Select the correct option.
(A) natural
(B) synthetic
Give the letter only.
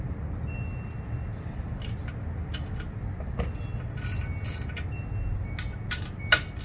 A